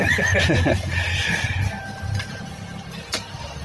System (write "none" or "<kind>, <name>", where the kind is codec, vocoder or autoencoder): none